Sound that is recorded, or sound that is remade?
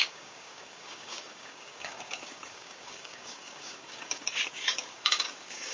remade